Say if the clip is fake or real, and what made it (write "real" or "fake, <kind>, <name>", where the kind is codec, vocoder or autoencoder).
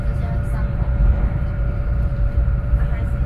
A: fake, vocoder, BigVGAN v2